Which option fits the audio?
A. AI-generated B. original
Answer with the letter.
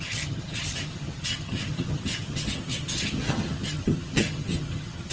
A